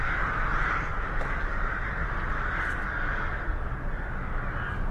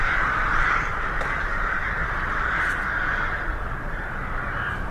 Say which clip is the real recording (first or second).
first